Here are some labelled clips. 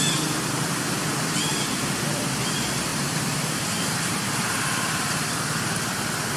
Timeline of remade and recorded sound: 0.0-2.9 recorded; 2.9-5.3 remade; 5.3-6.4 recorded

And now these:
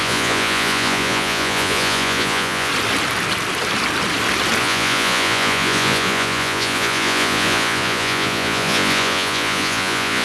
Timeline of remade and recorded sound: 0.0-2.7 remade; 2.7-4.6 recorded; 4.6-10.2 remade

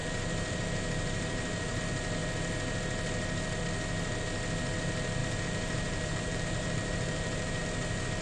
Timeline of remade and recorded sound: 0.0-1.8 remade; 1.8-5.2 recorded; 5.2-7.6 remade; 7.6-8.2 recorded

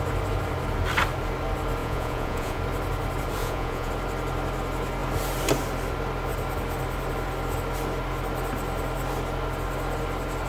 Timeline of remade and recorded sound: 0.0-1.8 recorded; 1.8-2.6 remade; 2.6-3.4 recorded; 3.4-3.9 remade; 3.9-10.5 recorded